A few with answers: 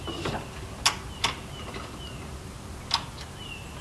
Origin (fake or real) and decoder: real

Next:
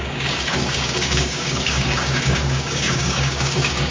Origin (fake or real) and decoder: fake, codec, DAC